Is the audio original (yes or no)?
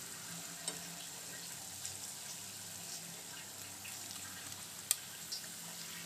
yes